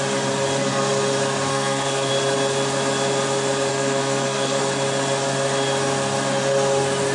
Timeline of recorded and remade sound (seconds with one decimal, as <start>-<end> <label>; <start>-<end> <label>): 0.0-1.5 recorded; 1.5-2.1 remade; 2.1-3.7 recorded; 3.7-4.6 remade; 4.6-7.1 recorded